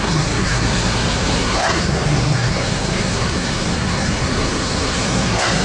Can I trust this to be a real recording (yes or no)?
no